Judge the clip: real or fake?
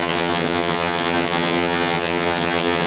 fake